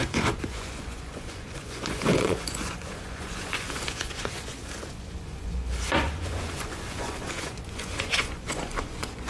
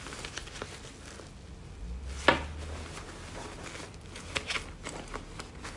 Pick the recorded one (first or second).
second